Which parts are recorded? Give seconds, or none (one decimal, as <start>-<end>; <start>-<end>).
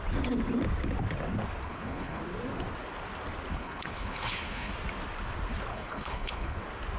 0.0-1.7; 2.2-3.5; 4.7-5.7; 6.6-7.0